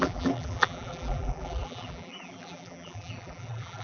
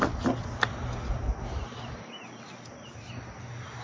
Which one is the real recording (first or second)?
second